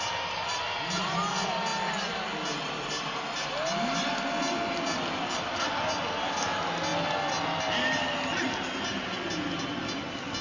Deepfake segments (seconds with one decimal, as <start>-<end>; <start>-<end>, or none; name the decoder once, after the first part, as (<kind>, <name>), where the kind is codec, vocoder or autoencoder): none

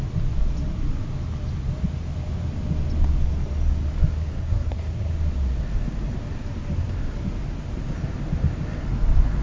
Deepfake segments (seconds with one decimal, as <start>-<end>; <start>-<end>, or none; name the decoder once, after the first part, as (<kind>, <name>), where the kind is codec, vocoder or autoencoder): 4.3-5.1 (codec, SNAC)

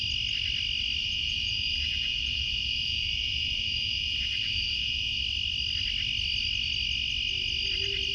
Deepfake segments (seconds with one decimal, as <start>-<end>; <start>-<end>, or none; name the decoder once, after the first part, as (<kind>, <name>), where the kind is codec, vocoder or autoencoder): 1.0-5.2 (vocoder, Vocos)